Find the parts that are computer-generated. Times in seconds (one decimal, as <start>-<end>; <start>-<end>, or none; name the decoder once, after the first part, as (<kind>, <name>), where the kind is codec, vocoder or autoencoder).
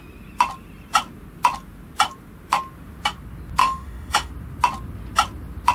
3.6-4.3 (autoencoder, DAC-VAE)